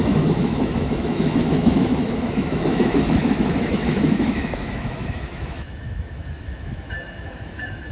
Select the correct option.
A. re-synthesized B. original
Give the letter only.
A